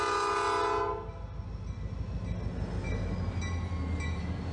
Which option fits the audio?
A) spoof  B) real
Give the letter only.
B